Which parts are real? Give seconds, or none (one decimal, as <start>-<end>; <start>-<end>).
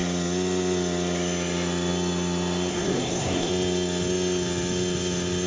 0.0-2.7; 3.5-5.5